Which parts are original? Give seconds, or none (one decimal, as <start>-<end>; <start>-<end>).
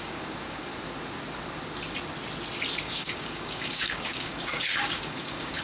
0.7-2.8